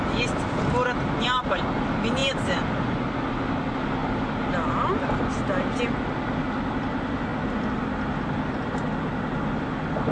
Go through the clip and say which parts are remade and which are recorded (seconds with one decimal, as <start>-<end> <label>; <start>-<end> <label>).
0.0-4.0 recorded; 4.0-5.8 remade; 5.8-10.1 recorded